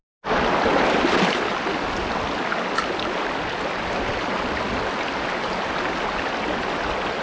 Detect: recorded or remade recorded